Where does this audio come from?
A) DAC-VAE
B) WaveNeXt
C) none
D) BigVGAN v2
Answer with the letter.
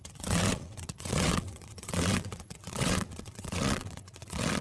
B